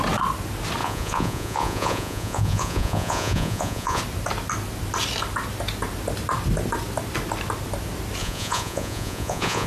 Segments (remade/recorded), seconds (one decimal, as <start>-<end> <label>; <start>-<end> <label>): 0.0-0.8 recorded; 0.8-4.0 remade; 4.0-8.2 recorded; 8.2-9.7 remade

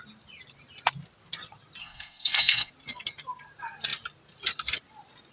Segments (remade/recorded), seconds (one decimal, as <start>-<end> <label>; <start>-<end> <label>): 0.0-1.8 recorded; 1.8-2.7 remade; 2.7-5.3 recorded

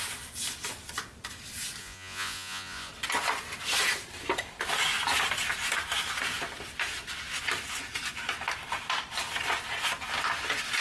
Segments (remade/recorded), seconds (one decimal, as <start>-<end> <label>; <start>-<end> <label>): 0.0-1.8 recorded; 1.8-2.9 remade; 2.9-10.8 recorded

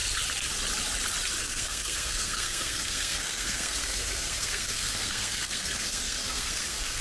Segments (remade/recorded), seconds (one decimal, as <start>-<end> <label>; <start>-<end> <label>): 0.0-1.4 recorded; 1.4-7.0 remade